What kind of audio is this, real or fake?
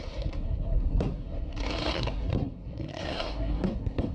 fake